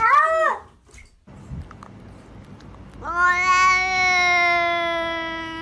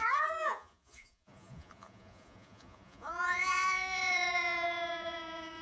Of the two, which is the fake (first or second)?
second